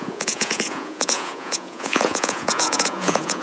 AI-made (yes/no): yes